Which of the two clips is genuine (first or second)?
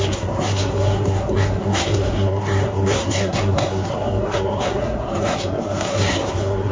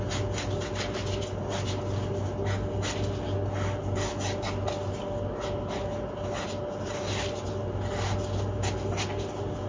second